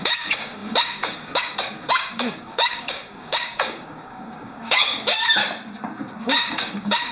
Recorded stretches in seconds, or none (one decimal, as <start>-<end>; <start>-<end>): 5.4-6.2